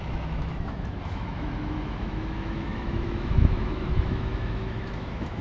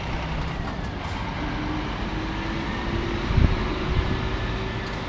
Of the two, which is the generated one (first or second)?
first